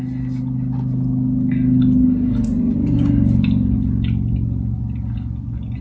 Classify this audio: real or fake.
real